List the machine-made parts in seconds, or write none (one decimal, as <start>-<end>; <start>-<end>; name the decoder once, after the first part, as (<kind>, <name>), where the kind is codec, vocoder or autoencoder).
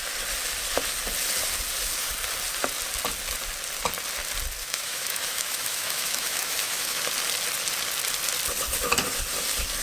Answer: 4.6-7.0 (autoencoder, DAC-VAE)